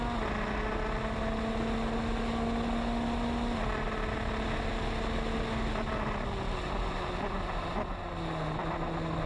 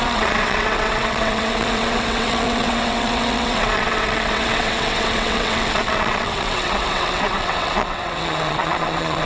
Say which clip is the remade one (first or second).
second